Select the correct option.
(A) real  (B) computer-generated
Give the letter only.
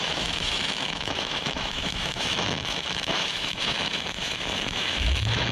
B